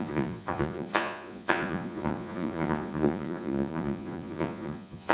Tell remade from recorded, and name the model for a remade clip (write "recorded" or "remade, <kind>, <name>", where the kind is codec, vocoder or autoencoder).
remade, vocoder, Vocos